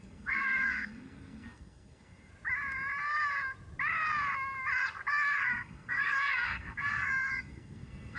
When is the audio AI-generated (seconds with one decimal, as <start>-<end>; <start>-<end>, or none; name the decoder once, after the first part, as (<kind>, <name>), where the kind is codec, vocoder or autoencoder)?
0.0-2.3 (codec, SNAC); 5.4-8.2